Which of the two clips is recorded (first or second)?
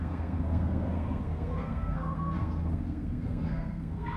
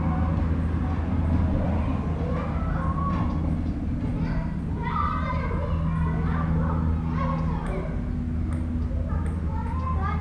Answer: second